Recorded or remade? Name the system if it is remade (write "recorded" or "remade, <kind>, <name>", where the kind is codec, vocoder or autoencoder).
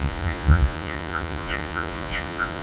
remade, vocoder, Vocos